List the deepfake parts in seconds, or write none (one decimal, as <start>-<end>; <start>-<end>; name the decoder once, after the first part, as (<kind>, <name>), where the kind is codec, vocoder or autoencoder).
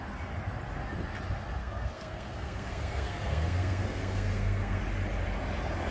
1.6-4.8 (codec, SNAC)